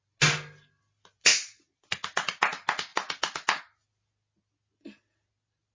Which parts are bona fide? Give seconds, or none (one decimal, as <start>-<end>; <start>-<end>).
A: 0.0-1.3; 1.9-2.9; 3.6-5.7